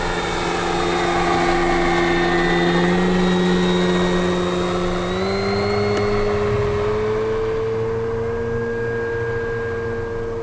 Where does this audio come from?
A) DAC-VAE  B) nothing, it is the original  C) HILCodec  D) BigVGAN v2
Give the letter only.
B